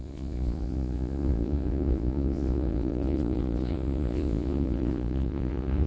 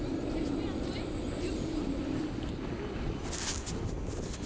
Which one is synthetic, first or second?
first